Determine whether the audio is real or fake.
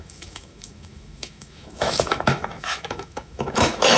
fake